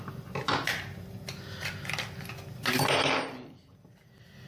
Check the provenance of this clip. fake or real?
real